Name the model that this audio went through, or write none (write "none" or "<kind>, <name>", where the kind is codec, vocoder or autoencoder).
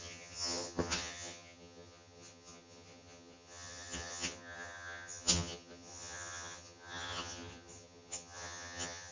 vocoder, HiFi-GAN